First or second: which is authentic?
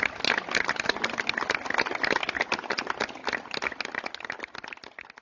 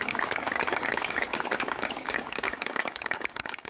first